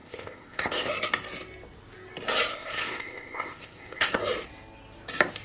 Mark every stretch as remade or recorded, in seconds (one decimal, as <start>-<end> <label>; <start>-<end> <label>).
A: 0.0-0.9 remade; 0.9-2.5 recorded; 2.5-4.2 remade; 4.2-5.4 recorded